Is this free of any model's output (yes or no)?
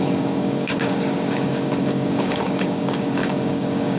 no